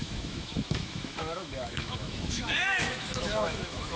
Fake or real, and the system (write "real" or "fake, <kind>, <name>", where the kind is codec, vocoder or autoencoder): fake, autoencoder, DAC-VAE